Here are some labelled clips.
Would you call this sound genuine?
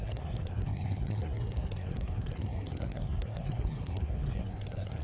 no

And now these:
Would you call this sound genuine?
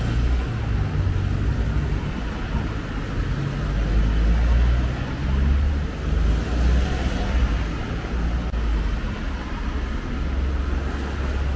yes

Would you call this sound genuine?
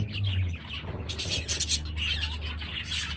yes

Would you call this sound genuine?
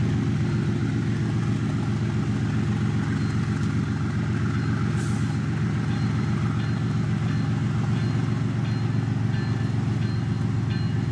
yes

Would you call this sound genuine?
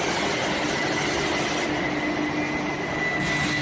yes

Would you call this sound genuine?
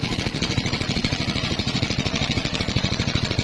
no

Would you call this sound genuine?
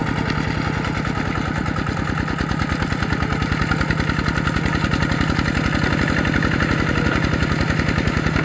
yes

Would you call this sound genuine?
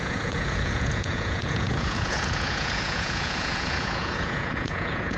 no